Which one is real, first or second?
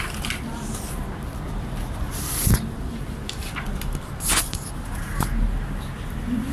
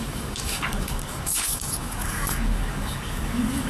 first